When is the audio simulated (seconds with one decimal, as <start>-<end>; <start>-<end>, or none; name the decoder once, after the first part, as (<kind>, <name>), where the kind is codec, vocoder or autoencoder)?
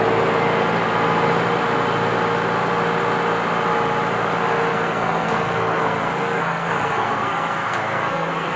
4.7-8.6 (codec, SNAC)